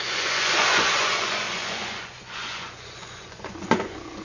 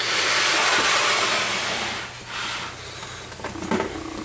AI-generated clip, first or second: first